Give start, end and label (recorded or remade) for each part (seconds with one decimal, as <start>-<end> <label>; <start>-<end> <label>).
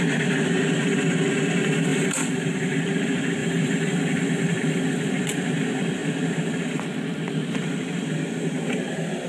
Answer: 0.0-1.9 recorded; 1.9-2.8 remade; 2.8-3.4 recorded; 3.4-5.1 remade; 5.1-9.3 recorded